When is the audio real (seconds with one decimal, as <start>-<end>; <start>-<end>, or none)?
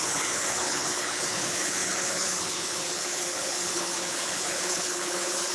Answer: none